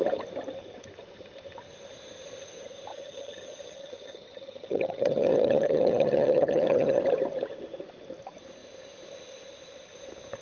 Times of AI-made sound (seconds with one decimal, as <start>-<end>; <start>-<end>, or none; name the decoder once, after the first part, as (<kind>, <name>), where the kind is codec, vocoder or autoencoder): 2.9-7.0 (vocoder, HiFi-GAN)